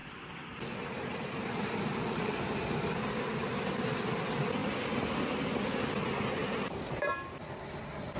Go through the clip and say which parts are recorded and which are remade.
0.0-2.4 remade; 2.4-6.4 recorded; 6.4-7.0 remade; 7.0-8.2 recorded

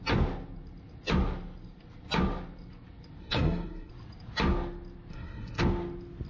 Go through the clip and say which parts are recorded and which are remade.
0.0-3.2 recorded; 3.2-3.9 remade; 3.9-5.1 recorded; 5.1-5.6 remade; 5.6-6.3 recorded

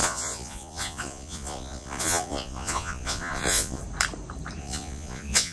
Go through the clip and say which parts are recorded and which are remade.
0.0-3.8 remade; 3.8-4.6 recorded; 4.6-5.5 remade

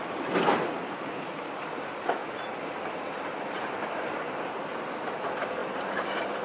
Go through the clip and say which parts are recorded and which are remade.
0.0-2.2 remade; 2.2-3.4 recorded; 3.4-6.4 remade

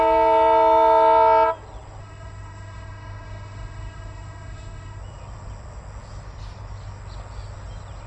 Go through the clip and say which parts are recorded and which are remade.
0.0-2.0 recorded; 2.0-5.0 remade; 5.0-8.1 recorded

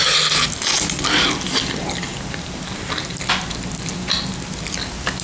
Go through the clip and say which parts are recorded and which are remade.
0.0-5.2 recorded